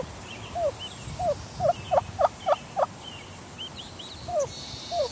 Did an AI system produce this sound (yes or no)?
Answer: no